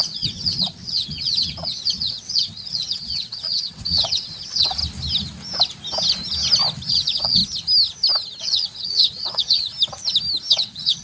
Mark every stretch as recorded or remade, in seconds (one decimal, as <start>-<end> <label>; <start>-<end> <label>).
0.0-4.8 remade; 4.8-6.9 recorded; 6.9-7.4 remade; 7.4-8.4 recorded; 8.4-9.7 remade; 9.7-10.5 recorded; 10.5-11.0 remade